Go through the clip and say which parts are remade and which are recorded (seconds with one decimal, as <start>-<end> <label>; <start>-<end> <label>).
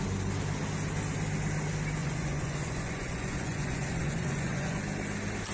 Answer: 0.0-2.0 recorded; 2.0-4.8 remade; 4.8-5.5 recorded